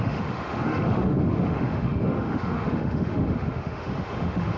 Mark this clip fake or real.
fake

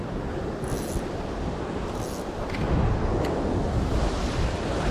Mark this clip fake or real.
real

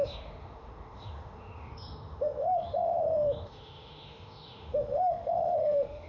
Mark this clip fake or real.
fake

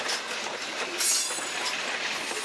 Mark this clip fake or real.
real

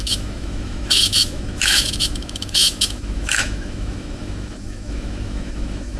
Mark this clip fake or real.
fake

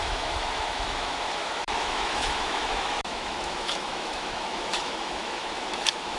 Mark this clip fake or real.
fake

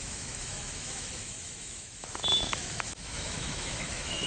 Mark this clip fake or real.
fake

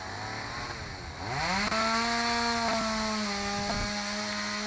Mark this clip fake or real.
real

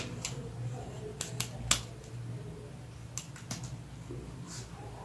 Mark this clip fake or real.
real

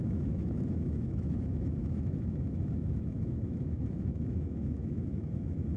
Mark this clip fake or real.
fake